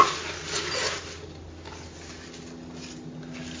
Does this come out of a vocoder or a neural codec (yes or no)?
no